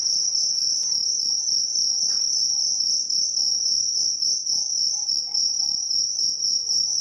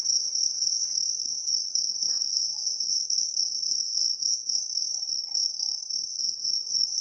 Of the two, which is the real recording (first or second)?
first